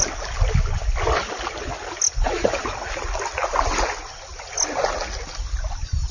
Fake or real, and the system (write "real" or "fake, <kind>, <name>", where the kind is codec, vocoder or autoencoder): real